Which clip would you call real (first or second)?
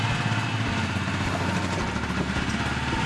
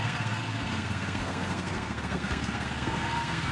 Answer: first